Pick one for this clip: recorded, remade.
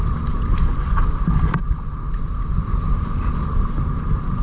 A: remade